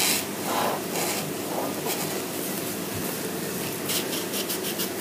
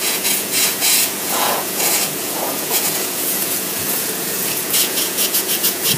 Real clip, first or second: first